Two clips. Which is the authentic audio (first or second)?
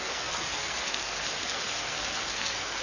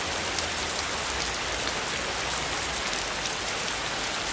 second